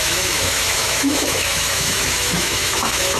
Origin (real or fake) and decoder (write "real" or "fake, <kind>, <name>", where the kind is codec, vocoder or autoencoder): fake, autoencoder, DAC-VAE